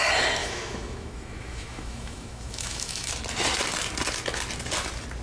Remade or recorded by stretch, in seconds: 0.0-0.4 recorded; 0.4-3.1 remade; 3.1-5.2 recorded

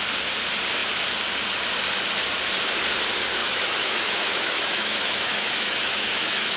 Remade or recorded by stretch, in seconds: 0.0-3.4 recorded; 3.4-6.6 remade

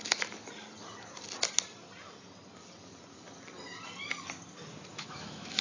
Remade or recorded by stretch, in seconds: 0.0-4.9 recorded; 4.9-5.6 remade

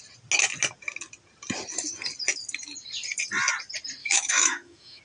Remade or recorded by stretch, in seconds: 0.0-4.0 recorded; 4.0-5.0 remade

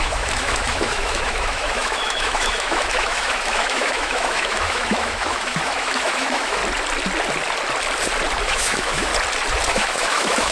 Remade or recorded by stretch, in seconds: 0.0-6.6 remade; 6.6-8.4 recorded; 8.4-9.1 remade; 9.1-9.7 recorded; 9.7-10.5 remade

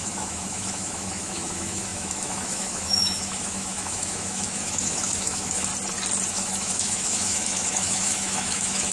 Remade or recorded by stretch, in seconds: 0.0-5.7 remade; 5.7-6.3 recorded; 6.3-8.9 remade